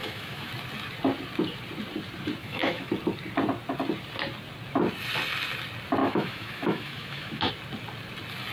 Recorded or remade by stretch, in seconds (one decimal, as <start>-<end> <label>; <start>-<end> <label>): 0.0-0.5 remade; 0.5-2.4 recorded; 2.4-2.9 remade; 2.9-6.0 recorded; 6.0-7.5 remade; 7.5-8.5 recorded